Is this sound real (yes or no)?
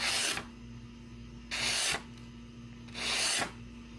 yes